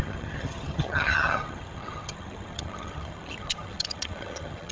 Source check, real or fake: fake